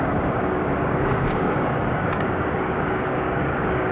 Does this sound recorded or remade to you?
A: remade